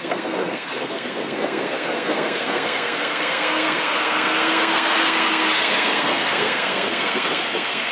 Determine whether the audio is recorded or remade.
remade